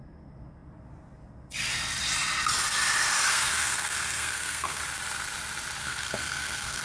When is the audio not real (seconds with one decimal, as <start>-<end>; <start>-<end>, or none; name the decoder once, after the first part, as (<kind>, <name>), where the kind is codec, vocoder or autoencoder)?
3.3-4.8 (codec, SNAC); 5.8-6.8